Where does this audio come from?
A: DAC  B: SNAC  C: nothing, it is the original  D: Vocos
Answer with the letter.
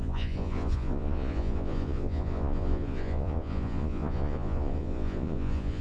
D